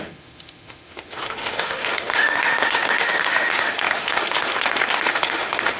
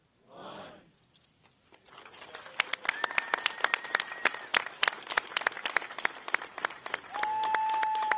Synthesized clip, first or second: first